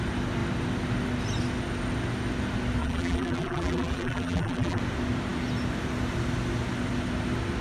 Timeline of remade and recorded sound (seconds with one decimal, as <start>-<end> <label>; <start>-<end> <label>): 0.0-2.8 recorded; 2.8-4.8 remade; 4.8-7.6 recorded